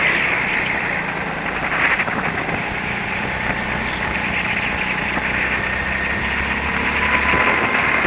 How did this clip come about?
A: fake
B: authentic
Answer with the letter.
B